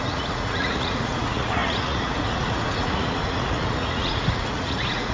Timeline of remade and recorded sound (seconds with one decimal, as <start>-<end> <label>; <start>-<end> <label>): 0.0-5.1 remade